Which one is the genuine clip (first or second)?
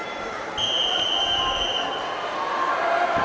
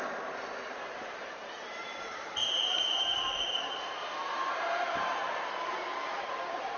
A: first